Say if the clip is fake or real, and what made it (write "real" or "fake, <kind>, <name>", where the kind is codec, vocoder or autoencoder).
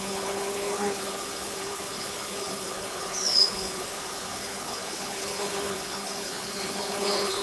fake, codec, HILCodec